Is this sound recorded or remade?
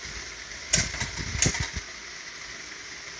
recorded